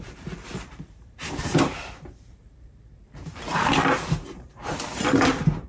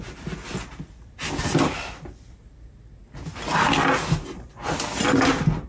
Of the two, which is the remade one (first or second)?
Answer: first